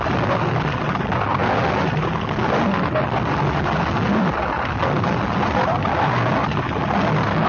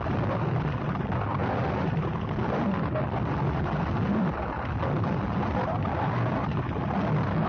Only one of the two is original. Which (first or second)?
first